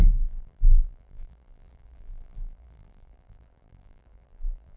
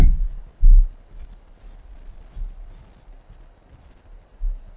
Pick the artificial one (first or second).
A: first